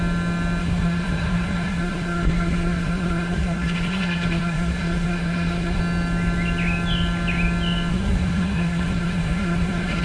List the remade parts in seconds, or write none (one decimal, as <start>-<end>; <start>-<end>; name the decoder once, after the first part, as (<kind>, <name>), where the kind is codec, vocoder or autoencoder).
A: 0.6-5.8 (codec, SNAC); 7.9-10.0